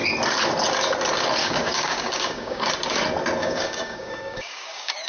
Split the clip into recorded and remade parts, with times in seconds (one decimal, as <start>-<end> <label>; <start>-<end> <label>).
0.0-1.4 recorded; 1.4-2.7 remade; 2.7-3.4 recorded; 3.4-5.1 remade